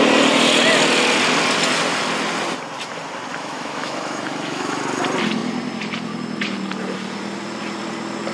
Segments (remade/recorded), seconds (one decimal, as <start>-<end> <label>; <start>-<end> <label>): 0.0-3.3 recorded; 3.3-4.8 remade; 4.8-8.3 recorded